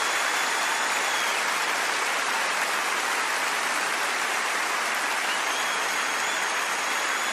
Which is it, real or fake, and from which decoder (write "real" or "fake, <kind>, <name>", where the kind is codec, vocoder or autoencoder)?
real